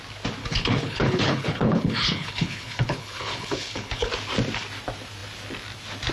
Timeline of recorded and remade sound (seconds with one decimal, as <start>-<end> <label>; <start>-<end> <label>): 0.0-0.4 recorded; 0.4-4.1 remade; 4.1-6.1 recorded